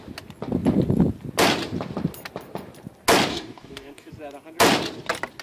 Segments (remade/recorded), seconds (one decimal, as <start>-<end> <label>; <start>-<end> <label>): 0.0-3.3 recorded; 3.3-4.1 remade; 4.1-5.4 recorded

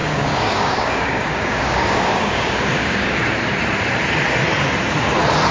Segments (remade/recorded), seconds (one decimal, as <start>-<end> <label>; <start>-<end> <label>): 0.0-3.3 remade; 3.3-5.5 recorded

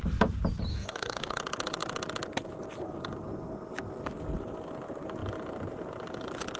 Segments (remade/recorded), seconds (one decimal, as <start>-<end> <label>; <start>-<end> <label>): 0.0-0.7 recorded; 0.7-1.4 remade; 1.4-6.6 recorded

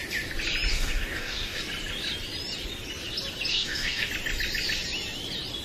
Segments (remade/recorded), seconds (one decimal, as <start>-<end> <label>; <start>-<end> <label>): 0.0-0.7 recorded; 0.7-1.6 remade; 1.6-3.5 recorded; 3.5-4.1 remade; 4.1-5.6 recorded